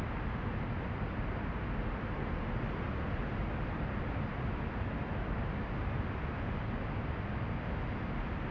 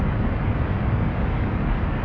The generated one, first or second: second